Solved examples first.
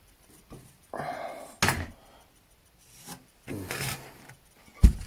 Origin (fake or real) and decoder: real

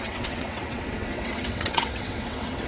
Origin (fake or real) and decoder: fake, vocoder, WaveNeXt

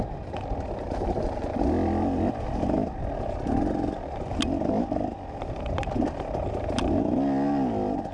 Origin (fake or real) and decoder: real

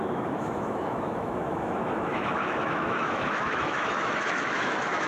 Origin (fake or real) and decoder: fake, autoencoder, DAC-VAE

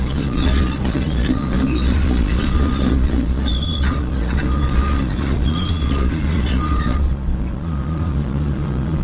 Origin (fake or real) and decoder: fake, vocoder, Vocos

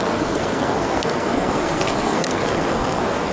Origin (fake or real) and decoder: fake, codec, SNAC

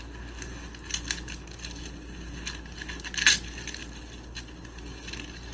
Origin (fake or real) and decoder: real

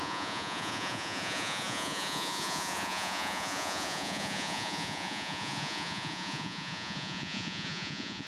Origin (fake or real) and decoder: fake, vocoder, Vocos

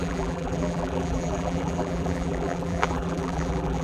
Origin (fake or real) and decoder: fake, vocoder, BigVGAN v2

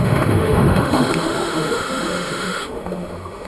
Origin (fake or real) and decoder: fake, autoencoder, DAC-VAE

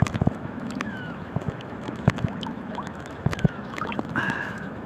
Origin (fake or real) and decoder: fake, autoencoder, DAC-VAE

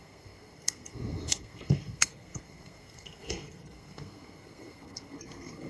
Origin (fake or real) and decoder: fake, codec, SNAC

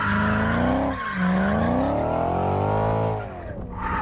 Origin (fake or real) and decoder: real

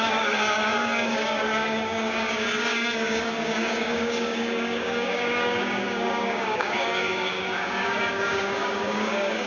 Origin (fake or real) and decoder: fake, codec, DAC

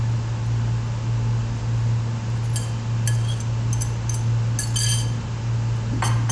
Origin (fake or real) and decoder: real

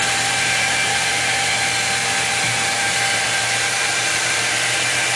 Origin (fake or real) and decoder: fake, vocoder, BigVGAN v2